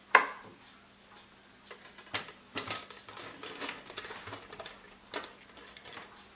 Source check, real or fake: real